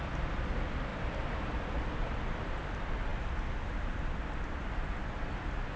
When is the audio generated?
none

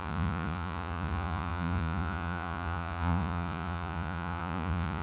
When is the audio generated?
0.0-5.0 (vocoder, Vocos)

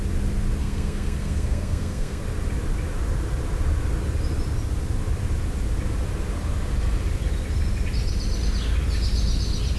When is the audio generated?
0.6-2.2 (codec, SNAC)

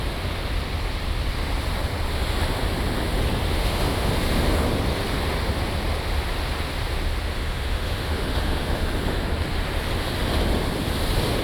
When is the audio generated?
3.5-4.1 (autoencoder, DAC-VAE); 7.3-8.8

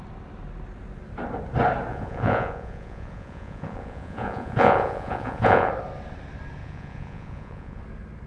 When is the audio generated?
1.9-5.7 (vocoder, Vocos); 6.6-7.8